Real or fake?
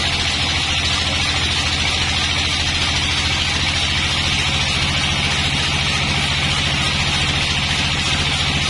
real